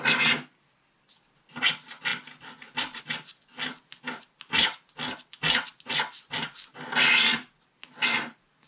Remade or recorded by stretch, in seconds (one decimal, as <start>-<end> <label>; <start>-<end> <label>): 0.0-8.7 recorded